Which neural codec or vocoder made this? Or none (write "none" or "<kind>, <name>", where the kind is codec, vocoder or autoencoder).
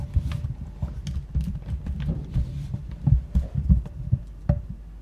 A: none